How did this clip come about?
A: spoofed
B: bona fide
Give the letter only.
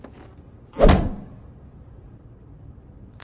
B